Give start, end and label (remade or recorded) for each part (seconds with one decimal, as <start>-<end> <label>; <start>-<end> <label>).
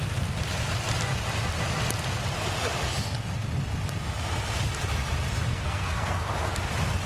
0.0-5.5 recorded; 5.5-6.5 remade; 6.5-7.1 recorded